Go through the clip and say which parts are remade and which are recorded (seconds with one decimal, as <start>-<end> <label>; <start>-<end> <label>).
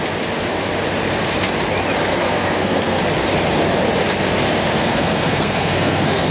0.0-2.1 recorded; 2.1-3.0 remade; 3.0-4.7 recorded; 4.7-6.3 remade